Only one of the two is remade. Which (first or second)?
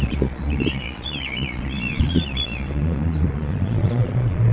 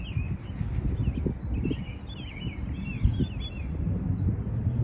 first